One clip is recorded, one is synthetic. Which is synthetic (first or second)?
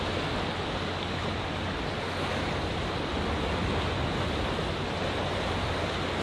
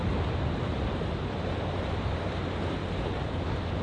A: second